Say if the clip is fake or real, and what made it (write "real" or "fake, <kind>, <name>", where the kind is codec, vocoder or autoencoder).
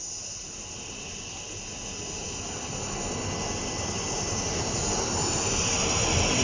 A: real